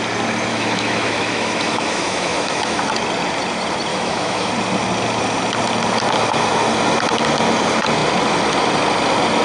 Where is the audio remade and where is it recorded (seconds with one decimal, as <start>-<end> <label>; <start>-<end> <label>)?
0.0-0.5 recorded; 0.5-2.8 remade; 2.8-3.9 recorded; 3.9-4.5 remade; 4.5-9.4 recorded